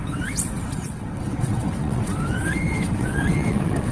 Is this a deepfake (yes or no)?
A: yes